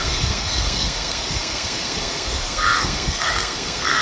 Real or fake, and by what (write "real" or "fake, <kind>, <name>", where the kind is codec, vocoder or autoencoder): fake, codec, SNAC